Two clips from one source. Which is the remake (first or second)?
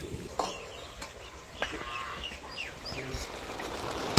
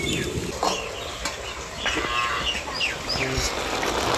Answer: first